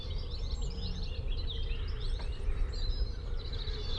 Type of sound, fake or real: real